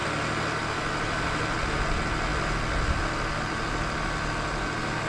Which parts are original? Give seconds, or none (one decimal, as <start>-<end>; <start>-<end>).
0.0-5.1